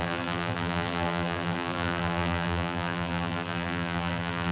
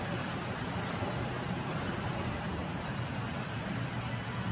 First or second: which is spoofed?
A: first